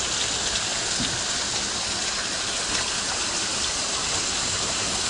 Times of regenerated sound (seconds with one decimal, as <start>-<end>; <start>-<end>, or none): none